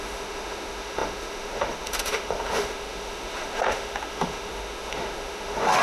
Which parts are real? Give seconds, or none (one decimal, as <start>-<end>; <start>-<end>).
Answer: none